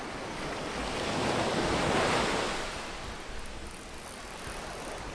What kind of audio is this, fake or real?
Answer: real